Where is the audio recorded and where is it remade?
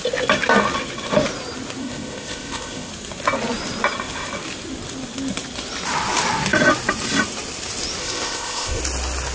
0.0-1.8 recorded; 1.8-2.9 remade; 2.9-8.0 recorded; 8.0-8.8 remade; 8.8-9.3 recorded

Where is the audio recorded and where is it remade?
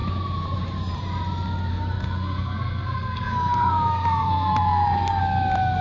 0.0-1.7 recorded; 1.7-5.2 remade; 5.2-5.8 recorded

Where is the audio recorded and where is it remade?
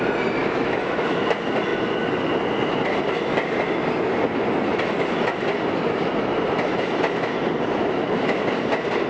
0.0-0.4 recorded; 0.4-1.2 remade; 1.2-9.1 recorded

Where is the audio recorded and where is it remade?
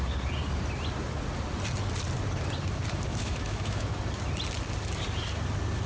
0.0-3.1 recorded; 3.1-4.0 remade; 4.0-5.9 recorded